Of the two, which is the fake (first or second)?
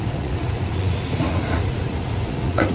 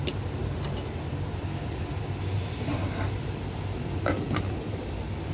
first